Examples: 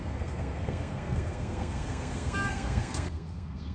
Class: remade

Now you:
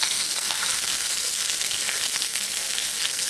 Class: remade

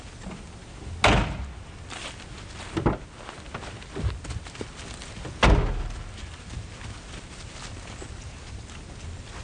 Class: recorded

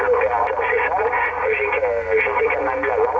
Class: recorded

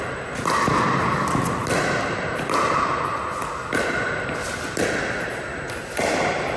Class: recorded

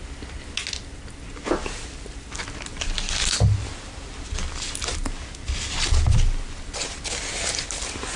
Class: recorded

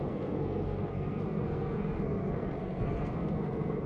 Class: remade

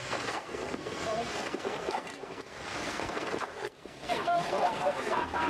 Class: remade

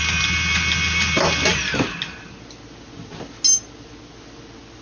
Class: recorded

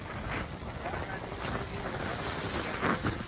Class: recorded